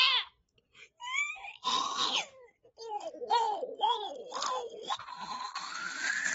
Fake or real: real